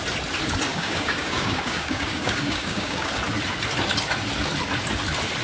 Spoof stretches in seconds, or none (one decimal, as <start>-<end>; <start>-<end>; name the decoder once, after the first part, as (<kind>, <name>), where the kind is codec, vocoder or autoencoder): 0.7-3.1 (codec, DAC)